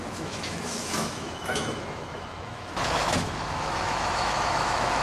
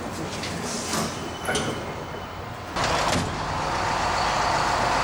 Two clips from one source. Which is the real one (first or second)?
second